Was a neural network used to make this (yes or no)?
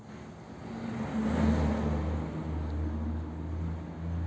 no